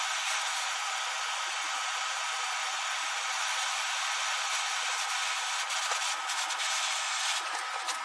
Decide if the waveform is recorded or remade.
recorded